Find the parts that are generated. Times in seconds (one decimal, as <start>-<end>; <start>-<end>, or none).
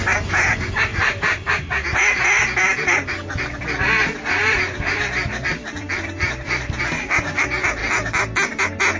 0.9-1.7; 4.4-6.8